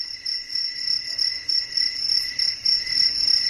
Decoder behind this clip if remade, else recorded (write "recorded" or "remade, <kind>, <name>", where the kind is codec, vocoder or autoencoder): remade, vocoder, BigVGAN v2